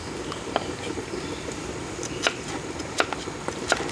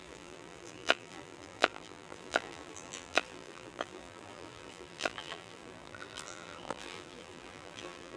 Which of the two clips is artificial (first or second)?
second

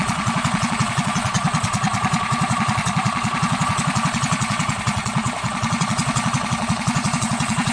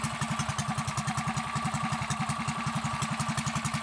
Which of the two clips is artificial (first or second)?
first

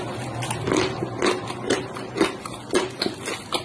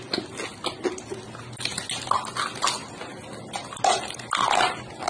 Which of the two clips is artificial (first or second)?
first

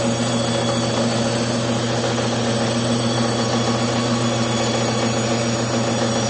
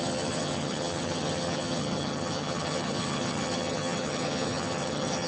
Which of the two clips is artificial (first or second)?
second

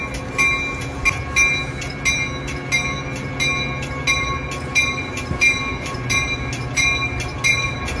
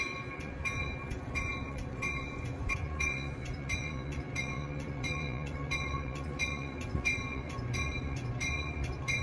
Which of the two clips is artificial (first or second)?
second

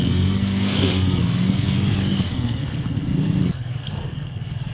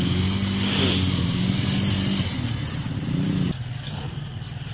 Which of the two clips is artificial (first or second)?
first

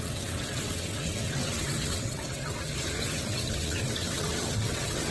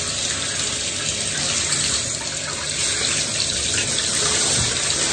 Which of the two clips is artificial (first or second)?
first